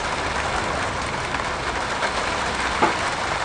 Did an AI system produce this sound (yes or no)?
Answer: no